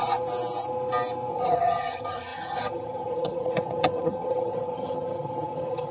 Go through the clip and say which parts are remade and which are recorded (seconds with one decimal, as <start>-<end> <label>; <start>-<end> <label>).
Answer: 0.0-1.3 recorded; 1.3-5.9 remade